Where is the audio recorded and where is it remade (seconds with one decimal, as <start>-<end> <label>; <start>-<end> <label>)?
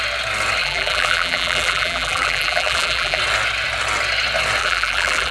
0.0-0.6 recorded; 0.6-3.2 remade; 3.2-4.6 recorded; 4.6-5.3 remade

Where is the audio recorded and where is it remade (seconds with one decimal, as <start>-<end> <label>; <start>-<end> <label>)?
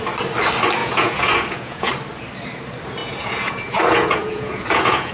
0.0-0.8 recorded; 0.8-1.9 remade; 1.9-3.0 recorded; 3.0-5.1 remade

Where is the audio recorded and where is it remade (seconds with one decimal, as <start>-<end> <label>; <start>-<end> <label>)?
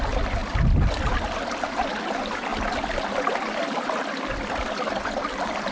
0.0-5.7 recorded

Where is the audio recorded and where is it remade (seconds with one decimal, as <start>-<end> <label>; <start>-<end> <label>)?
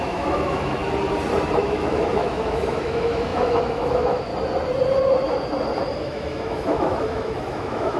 0.0-0.8 remade; 0.8-1.6 recorded; 1.6-4.3 remade; 4.3-6.0 recorded; 6.0-8.0 remade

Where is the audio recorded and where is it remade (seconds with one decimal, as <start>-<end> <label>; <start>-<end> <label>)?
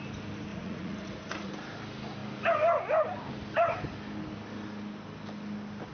0.0-0.5 recorded; 0.5-1.5 remade; 1.5-5.9 recorded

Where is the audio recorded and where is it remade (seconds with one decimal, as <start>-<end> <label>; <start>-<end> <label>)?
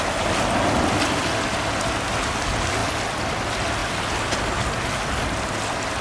0.0-6.0 recorded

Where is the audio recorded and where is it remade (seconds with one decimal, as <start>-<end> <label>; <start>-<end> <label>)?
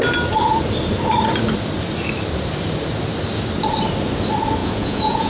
0.0-4.6 recorded; 4.6-5.3 remade